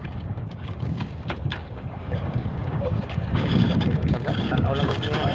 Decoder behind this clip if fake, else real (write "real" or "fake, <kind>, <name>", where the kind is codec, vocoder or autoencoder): fake, codec, DAC